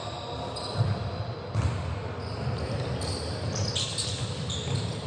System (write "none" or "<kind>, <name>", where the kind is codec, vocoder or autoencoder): none